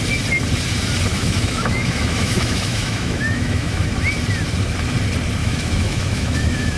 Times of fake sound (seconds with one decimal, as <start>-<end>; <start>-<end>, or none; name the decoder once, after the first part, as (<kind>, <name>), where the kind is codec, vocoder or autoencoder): 1.1-4.0 (autoencoder, DAC-VAE); 5.4-6.8